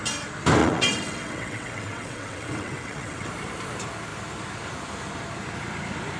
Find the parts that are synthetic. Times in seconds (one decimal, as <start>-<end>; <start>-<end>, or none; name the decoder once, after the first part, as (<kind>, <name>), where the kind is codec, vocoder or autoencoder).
0.6-3.3 (vocoder, WaveNeXt)